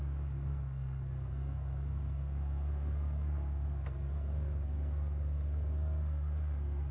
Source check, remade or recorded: remade